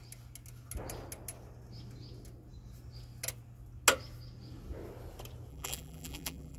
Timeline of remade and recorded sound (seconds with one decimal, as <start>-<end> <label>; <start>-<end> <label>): 0.0-5.5 recorded; 5.5-6.6 remade